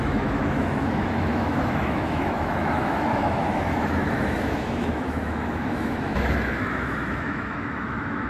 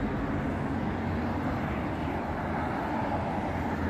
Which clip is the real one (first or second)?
second